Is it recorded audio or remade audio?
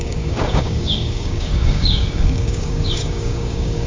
remade